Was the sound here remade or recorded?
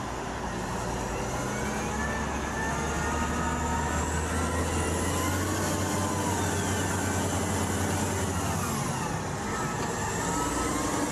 recorded